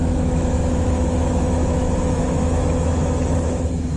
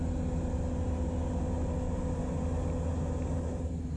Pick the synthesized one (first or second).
first